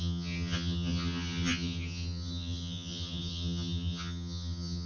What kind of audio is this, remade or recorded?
remade